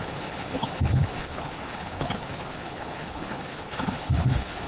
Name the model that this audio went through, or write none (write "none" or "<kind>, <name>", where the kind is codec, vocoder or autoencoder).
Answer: codec, HILCodec